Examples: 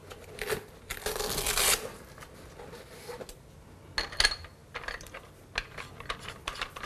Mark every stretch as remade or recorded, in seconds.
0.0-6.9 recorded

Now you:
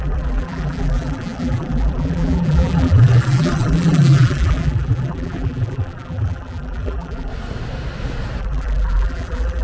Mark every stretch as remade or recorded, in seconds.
0.0-7.3 remade; 7.3-8.4 recorded; 8.4-9.6 remade

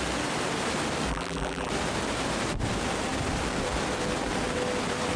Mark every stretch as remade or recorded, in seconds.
0.0-1.1 recorded; 1.1-1.7 remade; 1.7-5.2 recorded

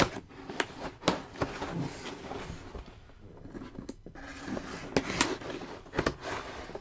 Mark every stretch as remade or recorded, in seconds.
0.0-6.8 recorded